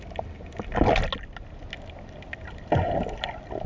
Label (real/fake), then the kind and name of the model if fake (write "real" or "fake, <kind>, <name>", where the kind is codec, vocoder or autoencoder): real